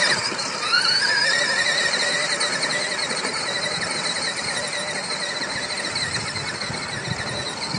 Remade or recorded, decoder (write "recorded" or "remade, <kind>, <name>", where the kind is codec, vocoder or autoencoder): recorded